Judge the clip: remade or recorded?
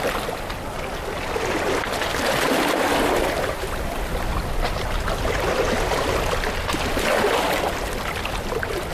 recorded